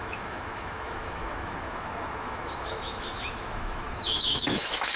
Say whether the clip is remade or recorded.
remade